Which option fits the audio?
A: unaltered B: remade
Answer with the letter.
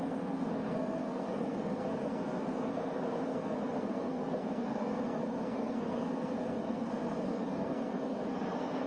B